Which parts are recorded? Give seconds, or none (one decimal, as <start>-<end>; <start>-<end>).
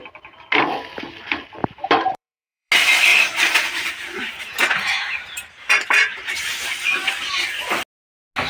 0.0-1.6; 2.7-3.1; 6.7-8.5